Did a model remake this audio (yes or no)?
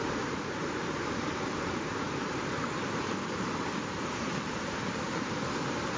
yes